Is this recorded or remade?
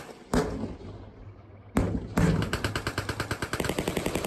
recorded